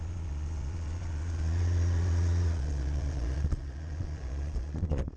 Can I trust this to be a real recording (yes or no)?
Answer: no